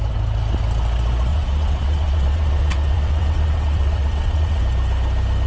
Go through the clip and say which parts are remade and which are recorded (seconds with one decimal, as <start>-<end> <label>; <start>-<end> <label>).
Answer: 0.0-1.3 recorded; 1.3-4.6 remade; 4.6-5.5 recorded